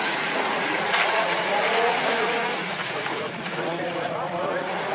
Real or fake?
fake